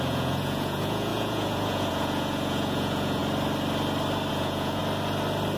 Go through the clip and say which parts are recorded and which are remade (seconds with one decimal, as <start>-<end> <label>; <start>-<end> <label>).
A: 0.0-3.2 remade; 3.2-4.3 recorded; 4.3-4.8 remade; 4.8-5.6 recorded